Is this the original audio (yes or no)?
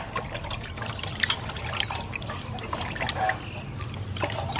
yes